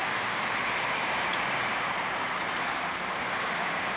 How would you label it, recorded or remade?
remade